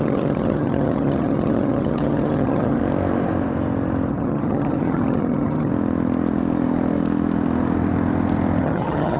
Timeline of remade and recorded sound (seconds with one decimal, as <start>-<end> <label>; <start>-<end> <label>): 0.0-2.8 remade; 2.8-4.1 recorded; 4.1-5.7 remade; 5.7-8.6 recorded; 8.6-9.2 remade